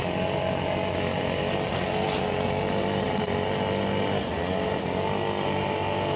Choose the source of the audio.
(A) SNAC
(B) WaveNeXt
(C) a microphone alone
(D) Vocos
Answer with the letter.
C